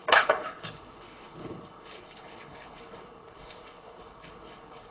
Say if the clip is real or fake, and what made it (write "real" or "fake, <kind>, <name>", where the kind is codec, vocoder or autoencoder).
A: fake, codec, HILCodec